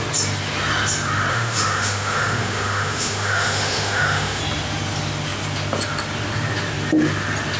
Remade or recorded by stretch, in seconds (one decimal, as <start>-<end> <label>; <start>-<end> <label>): 0.0-1.3 recorded; 1.3-4.4 remade; 4.4-7.6 recorded